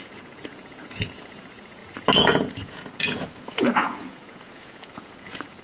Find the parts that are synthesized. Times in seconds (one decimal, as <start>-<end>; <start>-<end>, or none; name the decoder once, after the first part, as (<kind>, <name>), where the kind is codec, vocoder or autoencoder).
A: 0.0-5.6 (vocoder, Vocos)